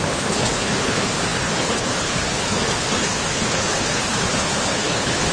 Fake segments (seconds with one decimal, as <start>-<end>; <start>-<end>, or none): 0.0-5.3